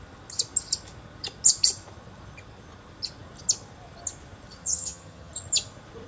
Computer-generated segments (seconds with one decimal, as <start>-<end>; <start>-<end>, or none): 4.6-5.3